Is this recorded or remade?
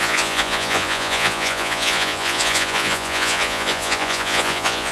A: remade